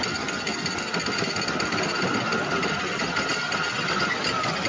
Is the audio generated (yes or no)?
no